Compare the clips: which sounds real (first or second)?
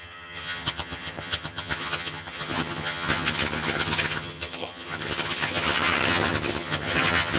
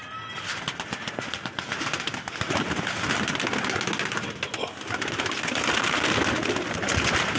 second